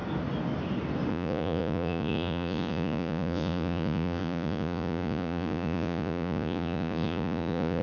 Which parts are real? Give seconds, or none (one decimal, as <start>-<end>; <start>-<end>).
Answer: 0.0-1.1